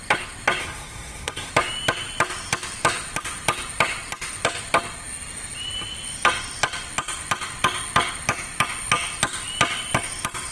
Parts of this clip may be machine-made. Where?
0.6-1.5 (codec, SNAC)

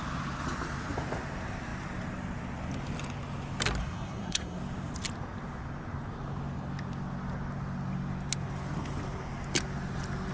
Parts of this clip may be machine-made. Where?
3.8-4.6 (codec, SNAC)